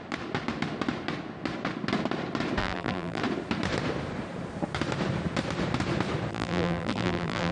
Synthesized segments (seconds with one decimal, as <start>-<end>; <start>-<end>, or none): 2.6-3.2; 6.3-7.5